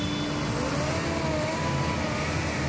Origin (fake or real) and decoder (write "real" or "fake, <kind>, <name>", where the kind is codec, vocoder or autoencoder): real